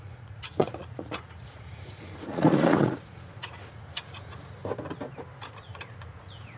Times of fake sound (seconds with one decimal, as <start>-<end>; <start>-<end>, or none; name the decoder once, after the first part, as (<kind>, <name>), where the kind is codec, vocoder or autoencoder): 0.0-4.6 (vocoder, Vocos); 5.4-6.6